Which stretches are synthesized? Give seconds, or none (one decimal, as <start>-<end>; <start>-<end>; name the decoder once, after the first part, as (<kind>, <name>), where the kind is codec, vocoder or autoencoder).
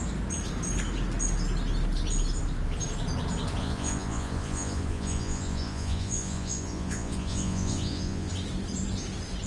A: 3.6-8.3 (vocoder, Vocos)